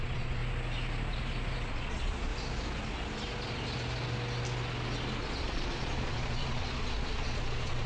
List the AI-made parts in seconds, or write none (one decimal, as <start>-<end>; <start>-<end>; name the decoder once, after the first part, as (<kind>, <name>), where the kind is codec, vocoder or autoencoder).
0.0-0.4 (vocoder, Vocos); 1.7-2.3; 5.2-7.9